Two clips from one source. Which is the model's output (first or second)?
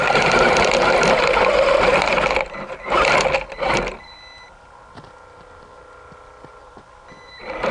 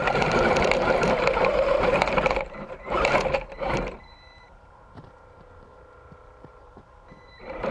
second